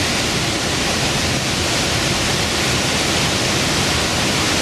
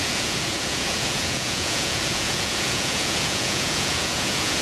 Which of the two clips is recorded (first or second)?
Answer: first